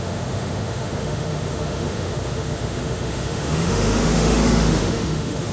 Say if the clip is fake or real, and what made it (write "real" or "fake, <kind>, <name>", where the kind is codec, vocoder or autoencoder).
fake, autoencoder, DAC-VAE